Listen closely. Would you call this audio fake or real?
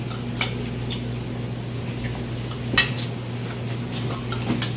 real